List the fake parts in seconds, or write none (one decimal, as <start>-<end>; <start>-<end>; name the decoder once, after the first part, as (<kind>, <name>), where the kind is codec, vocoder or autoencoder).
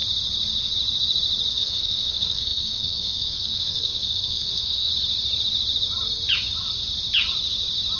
1.5-4.9 (codec, SNAC)